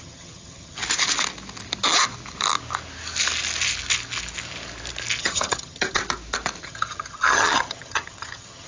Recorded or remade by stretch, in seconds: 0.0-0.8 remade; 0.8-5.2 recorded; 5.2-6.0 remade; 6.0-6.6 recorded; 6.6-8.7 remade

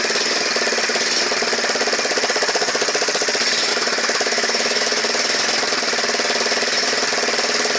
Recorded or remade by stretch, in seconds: 0.0-3.7 recorded; 3.7-5.0 remade; 5.0-7.8 recorded